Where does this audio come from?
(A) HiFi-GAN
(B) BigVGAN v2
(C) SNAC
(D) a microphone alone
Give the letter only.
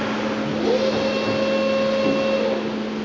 D